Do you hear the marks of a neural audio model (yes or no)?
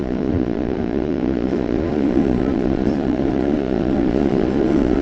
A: yes